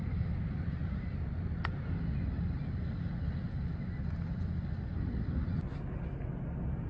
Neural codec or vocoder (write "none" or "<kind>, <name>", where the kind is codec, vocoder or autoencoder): none